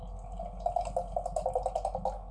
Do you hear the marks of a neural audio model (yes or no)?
no